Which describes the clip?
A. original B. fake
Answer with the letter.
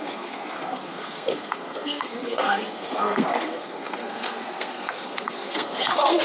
B